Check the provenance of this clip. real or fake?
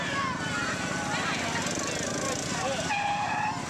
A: real